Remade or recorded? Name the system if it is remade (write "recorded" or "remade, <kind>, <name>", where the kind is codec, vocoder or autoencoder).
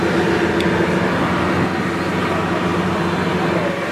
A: recorded